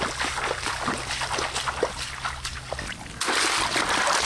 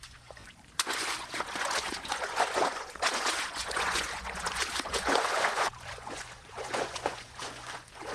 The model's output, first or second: second